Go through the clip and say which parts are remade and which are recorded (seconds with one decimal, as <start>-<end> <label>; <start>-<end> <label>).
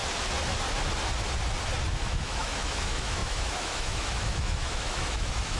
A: 0.0-1.9 recorded; 1.9-5.6 remade